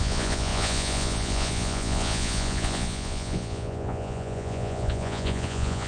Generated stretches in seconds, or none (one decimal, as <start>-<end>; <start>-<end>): 0.0-5.9